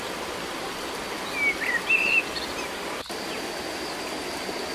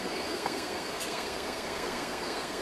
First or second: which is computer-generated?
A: second